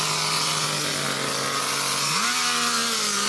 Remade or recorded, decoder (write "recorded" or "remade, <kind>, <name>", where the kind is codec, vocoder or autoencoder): recorded